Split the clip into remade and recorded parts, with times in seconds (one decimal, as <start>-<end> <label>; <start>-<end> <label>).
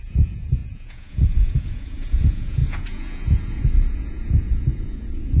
0.0-5.4 remade